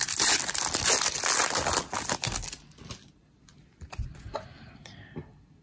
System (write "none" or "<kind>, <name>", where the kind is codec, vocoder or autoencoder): none